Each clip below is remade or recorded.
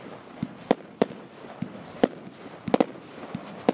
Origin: recorded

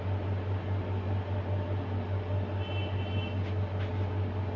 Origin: recorded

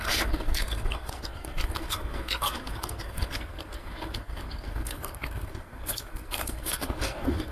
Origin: remade